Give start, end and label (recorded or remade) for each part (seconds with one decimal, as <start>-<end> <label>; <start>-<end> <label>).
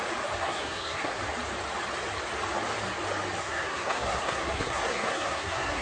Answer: 0.0-0.4 recorded; 0.4-1.2 remade; 1.2-3.4 recorded; 3.4-5.8 remade